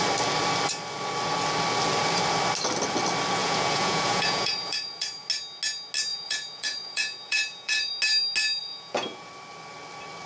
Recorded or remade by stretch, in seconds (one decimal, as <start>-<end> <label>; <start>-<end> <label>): 0.0-3.4 recorded; 3.4-5.3 remade; 5.3-6.1 recorded; 6.1-7.9 remade; 7.9-8.6 recorded; 8.6-9.3 remade; 9.3-10.3 recorded